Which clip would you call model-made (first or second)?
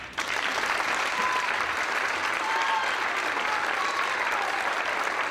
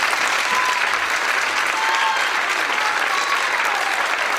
first